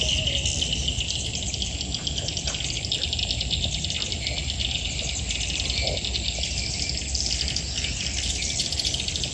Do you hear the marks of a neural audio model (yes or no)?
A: no